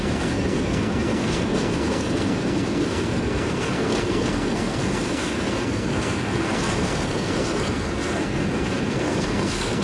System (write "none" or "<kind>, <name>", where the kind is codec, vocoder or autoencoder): codec, SNAC